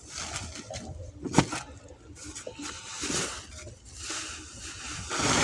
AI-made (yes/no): no